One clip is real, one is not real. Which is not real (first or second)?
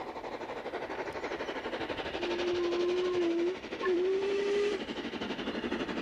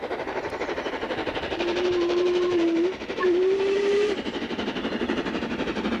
second